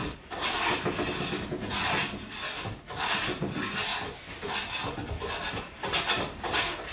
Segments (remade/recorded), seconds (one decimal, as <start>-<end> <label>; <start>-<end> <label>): 0.0-6.9 recorded